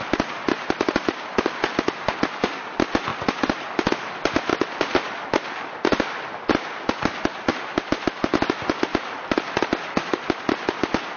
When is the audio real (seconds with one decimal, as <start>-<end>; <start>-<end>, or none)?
0.0-3.1; 3.9-4.5; 7.5-8.9; 9.5-10.1